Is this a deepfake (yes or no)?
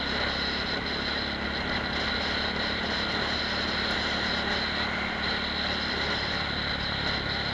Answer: no